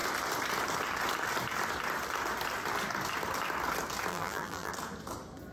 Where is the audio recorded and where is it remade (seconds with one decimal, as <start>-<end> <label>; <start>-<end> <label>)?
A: 0.0-4.1 recorded; 4.1-4.7 remade; 4.7-5.5 recorded